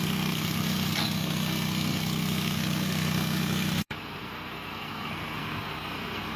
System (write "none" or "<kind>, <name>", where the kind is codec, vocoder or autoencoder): codec, SNAC